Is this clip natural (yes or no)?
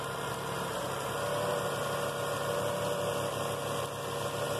yes